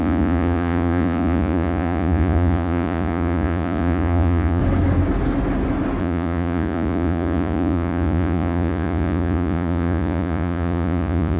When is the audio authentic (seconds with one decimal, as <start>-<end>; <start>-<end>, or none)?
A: 4.6-6.0